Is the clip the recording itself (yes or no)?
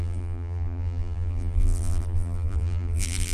no